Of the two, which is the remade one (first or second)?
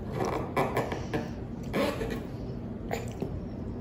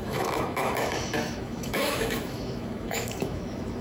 second